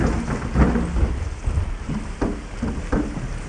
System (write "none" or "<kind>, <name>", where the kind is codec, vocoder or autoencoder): none